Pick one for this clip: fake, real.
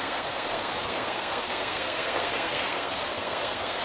fake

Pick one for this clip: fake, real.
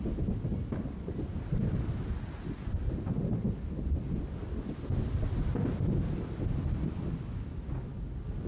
real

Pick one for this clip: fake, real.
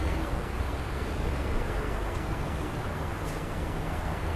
fake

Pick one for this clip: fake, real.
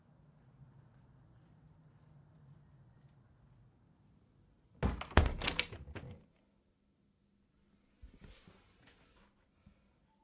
real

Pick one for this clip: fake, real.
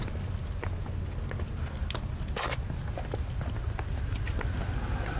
real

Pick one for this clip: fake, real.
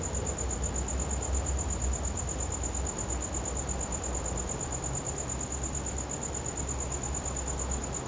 real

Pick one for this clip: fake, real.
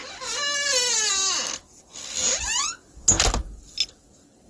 real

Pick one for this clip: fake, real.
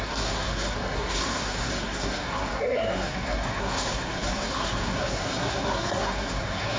fake